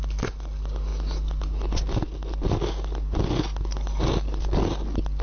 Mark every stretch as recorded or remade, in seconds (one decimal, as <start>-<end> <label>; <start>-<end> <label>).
0.0-5.2 recorded